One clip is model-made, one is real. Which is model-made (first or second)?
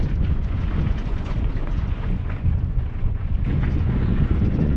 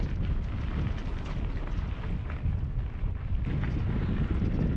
first